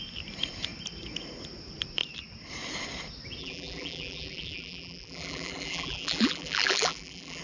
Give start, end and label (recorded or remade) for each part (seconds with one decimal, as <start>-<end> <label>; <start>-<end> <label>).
0.0-3.4 recorded; 3.4-7.4 remade